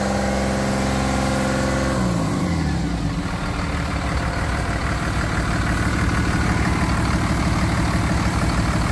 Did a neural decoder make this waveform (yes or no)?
no